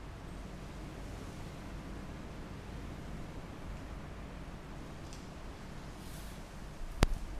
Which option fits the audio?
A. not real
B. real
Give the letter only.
B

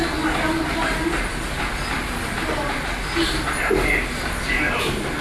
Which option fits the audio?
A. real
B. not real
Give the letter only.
A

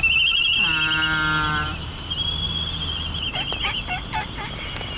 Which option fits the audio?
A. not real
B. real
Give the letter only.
B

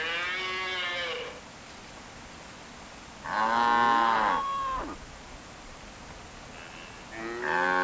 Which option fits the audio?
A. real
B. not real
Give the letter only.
A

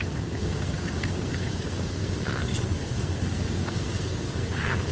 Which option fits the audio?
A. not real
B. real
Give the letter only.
A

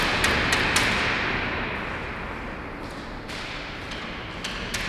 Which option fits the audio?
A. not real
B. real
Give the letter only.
B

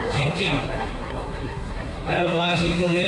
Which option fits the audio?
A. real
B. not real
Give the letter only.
B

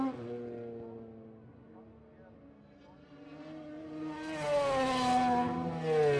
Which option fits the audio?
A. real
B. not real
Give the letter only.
A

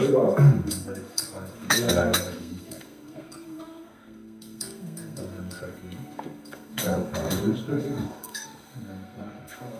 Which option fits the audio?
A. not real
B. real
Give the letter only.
A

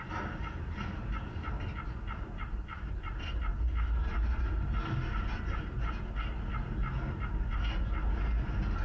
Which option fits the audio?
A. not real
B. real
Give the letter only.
B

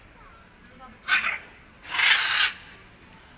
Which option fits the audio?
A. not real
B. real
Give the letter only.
B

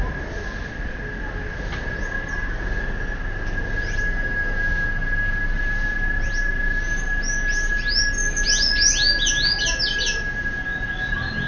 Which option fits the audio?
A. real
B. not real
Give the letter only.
A